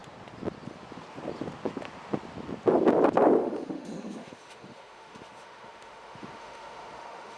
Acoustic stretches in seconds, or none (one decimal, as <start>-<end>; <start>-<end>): 0.0-3.4